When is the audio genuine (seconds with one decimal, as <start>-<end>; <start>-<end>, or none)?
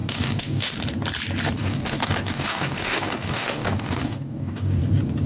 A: 0.8-1.6; 4.8-5.3